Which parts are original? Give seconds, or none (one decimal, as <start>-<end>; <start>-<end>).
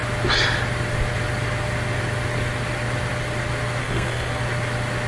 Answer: 0.0-3.8; 4.4-5.1